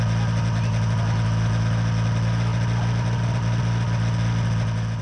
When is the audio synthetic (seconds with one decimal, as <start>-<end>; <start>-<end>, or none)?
none